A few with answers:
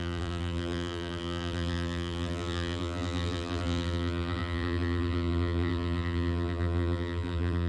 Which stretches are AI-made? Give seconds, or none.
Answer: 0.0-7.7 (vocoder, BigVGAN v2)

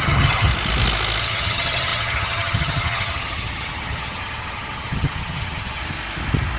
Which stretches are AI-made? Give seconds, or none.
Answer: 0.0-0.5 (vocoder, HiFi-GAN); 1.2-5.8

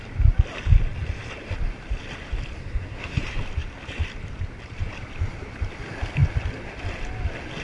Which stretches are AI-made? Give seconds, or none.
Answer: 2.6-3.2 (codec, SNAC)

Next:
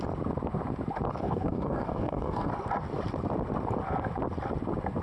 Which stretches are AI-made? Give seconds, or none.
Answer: 1.1-2.5 (codec, DAC)

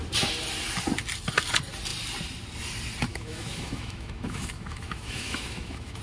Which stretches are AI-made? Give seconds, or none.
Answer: 3.1-6.0 (autoencoder, DAC-VAE)